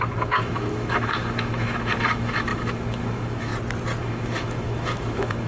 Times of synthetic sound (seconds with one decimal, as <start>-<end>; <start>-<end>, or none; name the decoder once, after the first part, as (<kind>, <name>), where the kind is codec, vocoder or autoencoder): 0.0-3.5 (autoencoder, DAC-VAE); 4.0-5.5